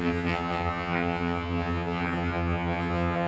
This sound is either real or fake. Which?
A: fake